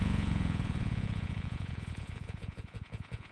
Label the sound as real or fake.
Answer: fake